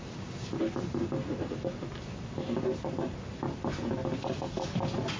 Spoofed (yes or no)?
no